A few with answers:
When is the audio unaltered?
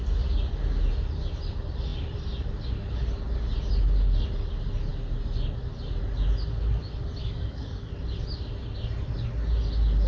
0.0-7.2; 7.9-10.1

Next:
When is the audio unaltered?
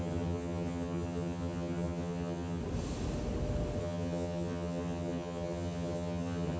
2.6-3.8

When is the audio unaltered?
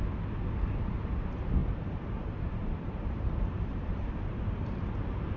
0.0-1.6; 4.8-5.4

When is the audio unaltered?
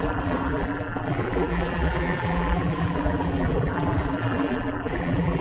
none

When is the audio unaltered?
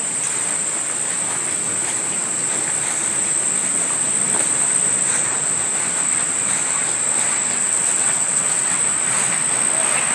0.0-7.6; 8.8-10.1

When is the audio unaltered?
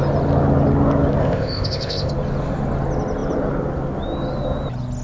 0.0-1.2; 2.1-5.0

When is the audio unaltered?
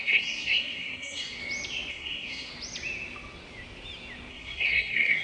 1.4-1.9; 2.5-4.3